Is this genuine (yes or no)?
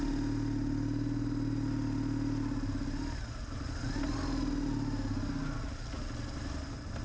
yes